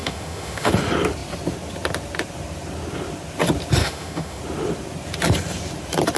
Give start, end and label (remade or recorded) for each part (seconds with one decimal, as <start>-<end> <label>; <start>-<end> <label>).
0.0-0.7 remade; 0.7-3.8 recorded; 3.8-4.4 remade; 4.4-6.2 recorded